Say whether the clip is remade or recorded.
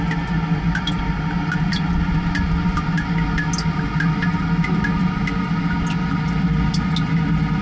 recorded